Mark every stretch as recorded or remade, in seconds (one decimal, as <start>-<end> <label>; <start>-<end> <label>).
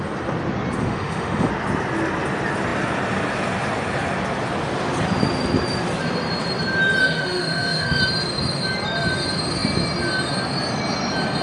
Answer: 0.0-0.8 recorded; 0.8-1.5 remade; 1.5-7.0 recorded; 7.0-8.0 remade; 8.0-11.4 recorded